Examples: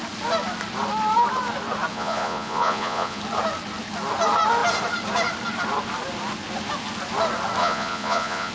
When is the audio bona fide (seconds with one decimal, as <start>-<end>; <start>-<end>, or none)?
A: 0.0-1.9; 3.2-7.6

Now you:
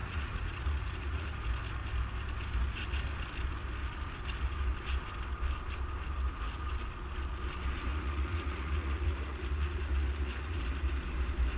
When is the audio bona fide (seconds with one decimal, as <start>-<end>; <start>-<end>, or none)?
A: 1.3-7.9; 10.6-11.6

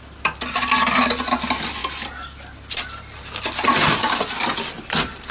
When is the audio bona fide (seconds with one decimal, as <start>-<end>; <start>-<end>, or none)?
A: 0.0-5.3

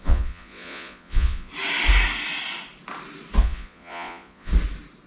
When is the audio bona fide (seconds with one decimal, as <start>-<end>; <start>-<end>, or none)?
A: 1.5-3.4; 4.5-5.1